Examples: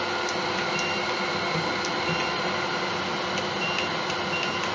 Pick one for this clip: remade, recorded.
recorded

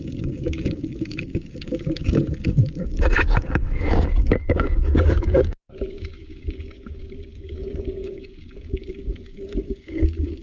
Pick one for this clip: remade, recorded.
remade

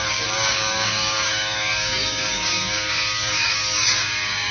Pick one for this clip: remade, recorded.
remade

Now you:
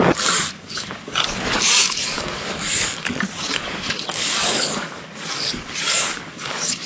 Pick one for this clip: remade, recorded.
remade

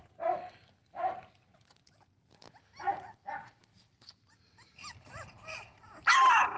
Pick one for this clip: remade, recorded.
recorded